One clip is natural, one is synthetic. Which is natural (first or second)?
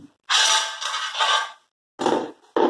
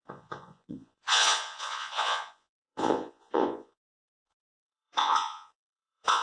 first